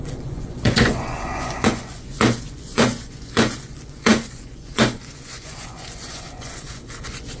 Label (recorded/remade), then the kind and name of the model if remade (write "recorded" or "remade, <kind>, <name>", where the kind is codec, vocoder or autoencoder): remade, vocoder, Vocos